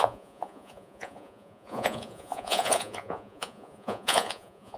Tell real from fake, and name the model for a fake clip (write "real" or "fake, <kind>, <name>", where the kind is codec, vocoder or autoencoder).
fake, vocoder, Vocos